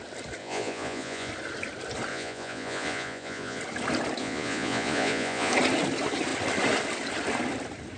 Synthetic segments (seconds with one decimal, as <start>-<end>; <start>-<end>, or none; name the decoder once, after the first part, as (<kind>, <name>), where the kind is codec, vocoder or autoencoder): 0.4-1.3 (vocoder, Vocos); 2.1-3.6; 4.2-5.5